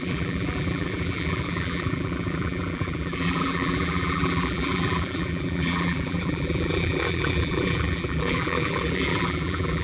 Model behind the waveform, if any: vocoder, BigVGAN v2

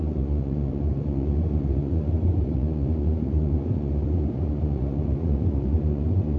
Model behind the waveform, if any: vocoder, Vocos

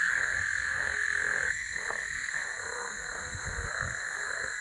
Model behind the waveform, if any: codec, SNAC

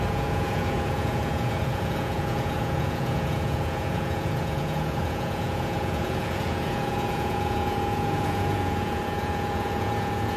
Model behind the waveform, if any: vocoder, Vocos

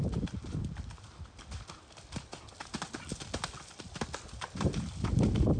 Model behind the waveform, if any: none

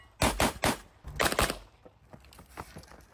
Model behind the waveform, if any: none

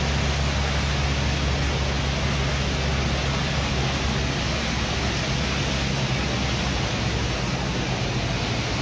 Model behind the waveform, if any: none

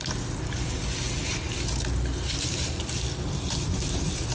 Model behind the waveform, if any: none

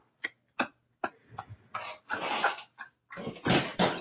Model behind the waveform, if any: none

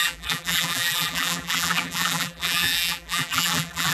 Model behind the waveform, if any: vocoder, BigVGAN v2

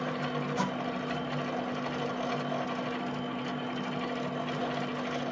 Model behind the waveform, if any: none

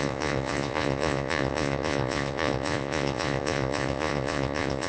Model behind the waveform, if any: vocoder, Vocos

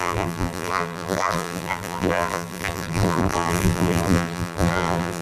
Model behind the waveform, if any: vocoder, BigVGAN v2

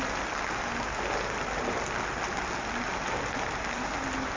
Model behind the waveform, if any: none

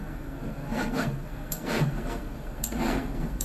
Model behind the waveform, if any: codec, SNAC